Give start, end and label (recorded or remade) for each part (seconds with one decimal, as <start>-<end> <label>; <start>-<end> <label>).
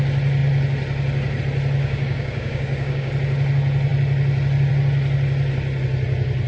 0.0-1.8 recorded; 1.8-3.1 remade; 3.1-6.5 recorded